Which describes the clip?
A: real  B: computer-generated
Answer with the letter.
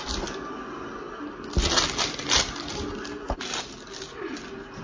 A